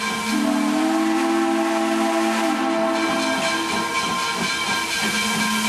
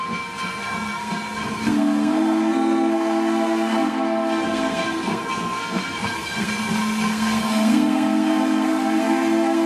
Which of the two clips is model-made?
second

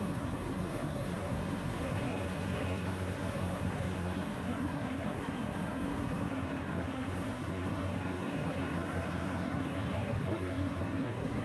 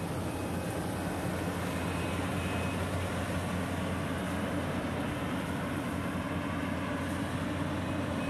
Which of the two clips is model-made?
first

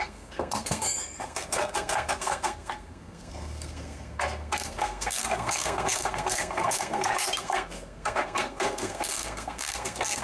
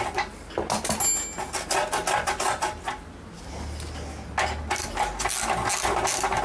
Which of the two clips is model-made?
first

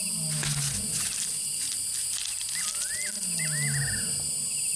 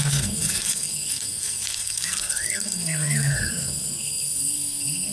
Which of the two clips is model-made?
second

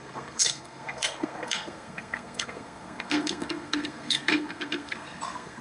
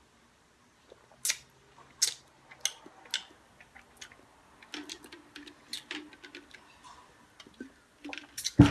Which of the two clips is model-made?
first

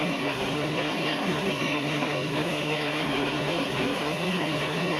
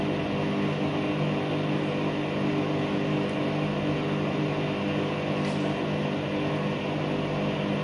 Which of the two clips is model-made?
first